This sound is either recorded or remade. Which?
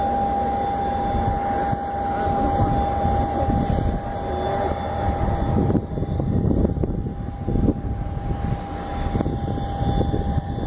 recorded